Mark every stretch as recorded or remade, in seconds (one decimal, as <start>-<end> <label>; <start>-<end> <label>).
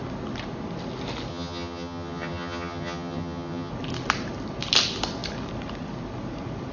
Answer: 0.0-1.3 recorded; 1.3-3.7 remade; 3.7-6.7 recorded